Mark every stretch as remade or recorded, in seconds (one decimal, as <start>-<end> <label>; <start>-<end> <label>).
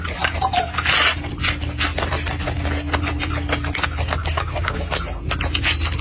0.0-4.2 recorded; 4.2-4.8 remade; 4.8-6.0 recorded